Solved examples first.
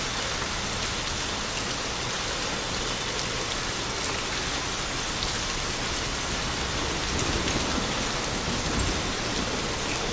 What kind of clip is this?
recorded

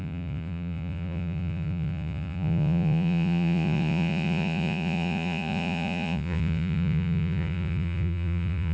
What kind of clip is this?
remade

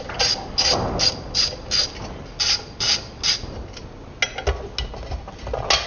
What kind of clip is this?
recorded